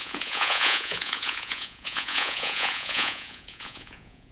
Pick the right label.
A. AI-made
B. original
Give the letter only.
A